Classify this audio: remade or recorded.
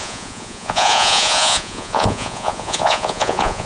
remade